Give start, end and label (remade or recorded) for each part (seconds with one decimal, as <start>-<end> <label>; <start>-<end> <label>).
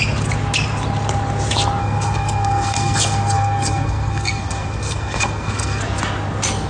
0.0-1.8 recorded; 1.8-5.8 remade; 5.8-6.7 recorded